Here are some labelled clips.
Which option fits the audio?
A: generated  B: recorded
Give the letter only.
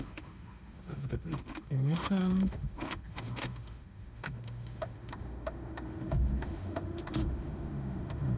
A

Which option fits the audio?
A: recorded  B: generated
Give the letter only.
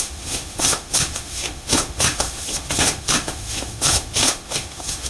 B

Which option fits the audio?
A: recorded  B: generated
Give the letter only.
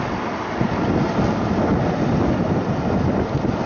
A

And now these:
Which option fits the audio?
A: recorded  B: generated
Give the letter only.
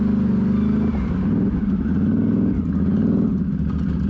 A